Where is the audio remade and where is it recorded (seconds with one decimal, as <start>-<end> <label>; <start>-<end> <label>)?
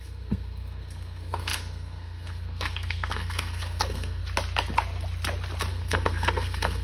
0.0-4.2 remade; 4.2-5.7 recorded; 5.7-6.8 remade